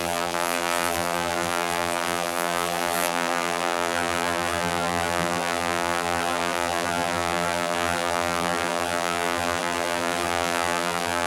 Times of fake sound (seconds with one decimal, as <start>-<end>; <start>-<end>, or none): 0.0-11.3